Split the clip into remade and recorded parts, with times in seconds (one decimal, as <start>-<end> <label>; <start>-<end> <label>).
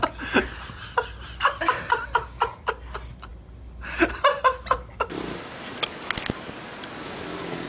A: 0.0-7.7 recorded